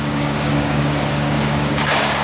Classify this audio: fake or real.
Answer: fake